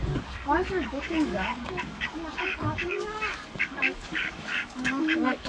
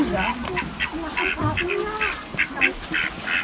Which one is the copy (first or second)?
first